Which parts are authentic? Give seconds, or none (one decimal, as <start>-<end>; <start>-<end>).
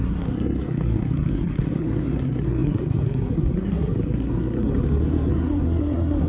none